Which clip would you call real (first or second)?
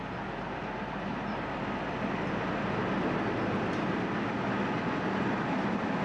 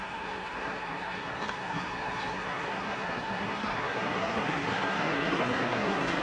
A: first